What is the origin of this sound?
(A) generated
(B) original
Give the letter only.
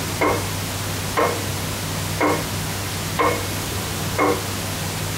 B